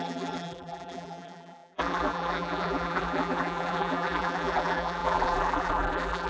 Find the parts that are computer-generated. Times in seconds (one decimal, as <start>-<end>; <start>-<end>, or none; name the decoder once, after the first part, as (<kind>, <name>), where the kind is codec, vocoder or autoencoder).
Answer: 0.0-6.3 (vocoder, BigVGAN v2)